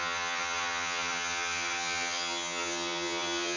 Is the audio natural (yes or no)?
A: no